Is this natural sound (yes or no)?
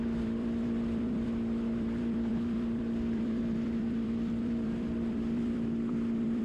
no